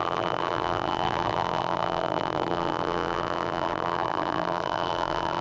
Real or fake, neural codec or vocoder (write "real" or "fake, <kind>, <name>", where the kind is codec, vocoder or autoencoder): fake, vocoder, BigVGAN v2